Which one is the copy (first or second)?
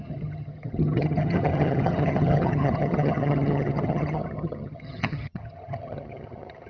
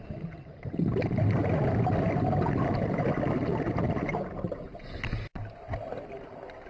first